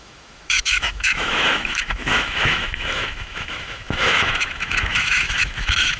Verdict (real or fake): fake